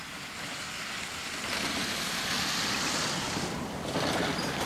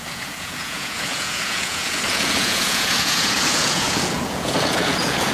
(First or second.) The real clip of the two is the first